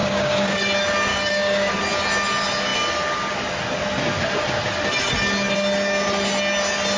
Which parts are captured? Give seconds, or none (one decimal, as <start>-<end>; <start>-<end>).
0.6-1.1; 1.7-7.0